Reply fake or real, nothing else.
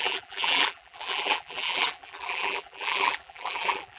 fake